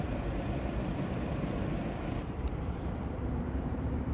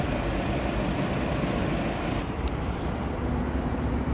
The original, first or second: second